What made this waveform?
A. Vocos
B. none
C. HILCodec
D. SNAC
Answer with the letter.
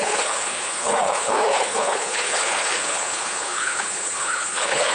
C